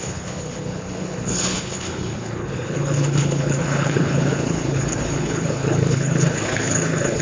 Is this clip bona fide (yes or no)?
no